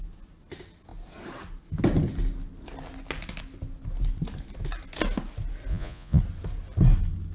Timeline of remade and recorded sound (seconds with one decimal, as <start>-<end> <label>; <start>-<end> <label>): 0.0-5.7 recorded; 5.7-6.2 remade; 6.2-7.3 recorded